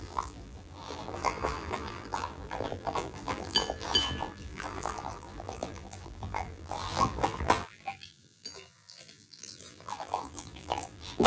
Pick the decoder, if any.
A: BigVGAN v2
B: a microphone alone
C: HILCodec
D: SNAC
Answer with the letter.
A